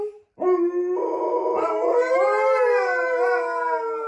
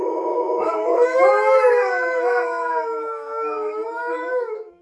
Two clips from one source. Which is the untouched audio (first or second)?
first